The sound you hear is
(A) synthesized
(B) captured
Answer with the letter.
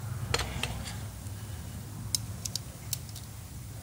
B